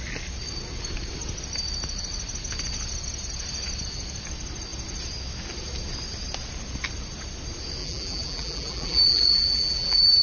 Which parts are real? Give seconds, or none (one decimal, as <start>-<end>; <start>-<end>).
0.0-7.8